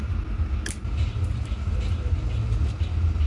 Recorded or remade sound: recorded